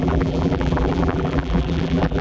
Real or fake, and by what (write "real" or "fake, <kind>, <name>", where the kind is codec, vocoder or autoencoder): fake, vocoder, BigVGAN v2